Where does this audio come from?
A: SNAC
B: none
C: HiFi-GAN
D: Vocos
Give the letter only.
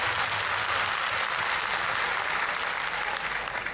B